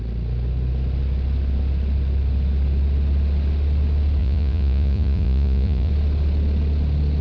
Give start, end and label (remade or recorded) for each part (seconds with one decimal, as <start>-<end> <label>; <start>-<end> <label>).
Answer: 0.0-4.2 recorded; 4.2-5.9 remade; 5.9-7.2 recorded